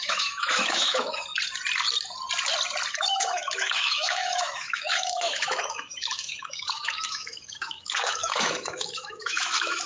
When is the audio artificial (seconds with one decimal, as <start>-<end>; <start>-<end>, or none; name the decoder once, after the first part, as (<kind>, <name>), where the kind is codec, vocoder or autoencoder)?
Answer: 0.0-1.3 (autoencoder, DAC-VAE); 2.9-9.9